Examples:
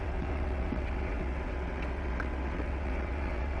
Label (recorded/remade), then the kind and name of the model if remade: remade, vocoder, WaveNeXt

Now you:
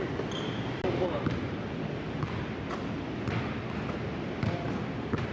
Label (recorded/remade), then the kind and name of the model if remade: recorded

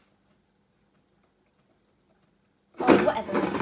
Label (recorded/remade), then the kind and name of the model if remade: recorded